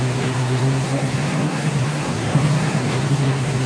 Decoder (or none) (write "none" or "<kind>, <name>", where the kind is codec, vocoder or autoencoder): codec, SNAC